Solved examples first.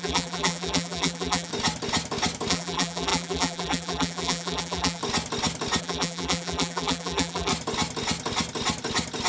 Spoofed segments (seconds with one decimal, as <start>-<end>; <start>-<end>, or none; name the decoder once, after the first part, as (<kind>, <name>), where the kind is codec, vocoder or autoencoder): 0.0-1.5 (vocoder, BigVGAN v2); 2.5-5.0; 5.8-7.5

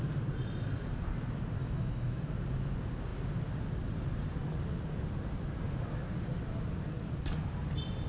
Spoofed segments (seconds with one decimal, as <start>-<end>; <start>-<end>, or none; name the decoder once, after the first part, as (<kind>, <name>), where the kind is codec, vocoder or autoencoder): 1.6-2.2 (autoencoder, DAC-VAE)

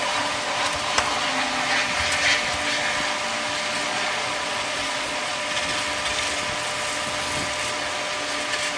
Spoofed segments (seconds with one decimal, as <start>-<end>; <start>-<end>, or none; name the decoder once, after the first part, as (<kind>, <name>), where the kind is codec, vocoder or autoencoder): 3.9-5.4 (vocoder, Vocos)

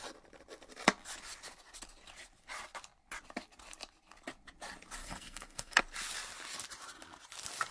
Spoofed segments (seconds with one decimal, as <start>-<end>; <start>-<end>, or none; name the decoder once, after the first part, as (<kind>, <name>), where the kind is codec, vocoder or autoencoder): 5.0-5.8 (codec, SNAC)

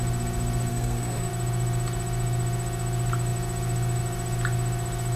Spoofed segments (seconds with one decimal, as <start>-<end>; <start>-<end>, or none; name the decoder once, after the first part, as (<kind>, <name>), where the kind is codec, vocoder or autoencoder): 0.7-1.3 (codec, SNAC)

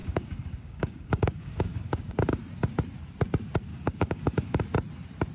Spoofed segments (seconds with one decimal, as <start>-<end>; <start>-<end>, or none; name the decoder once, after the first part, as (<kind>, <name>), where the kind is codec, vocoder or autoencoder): 0.0-2.1 (codec, DAC); 3.7-4.6